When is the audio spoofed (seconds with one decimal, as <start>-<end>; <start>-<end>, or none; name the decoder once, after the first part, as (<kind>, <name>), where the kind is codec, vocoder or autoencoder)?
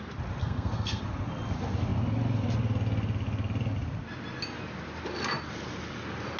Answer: 0.4-1.0 (codec, SNAC)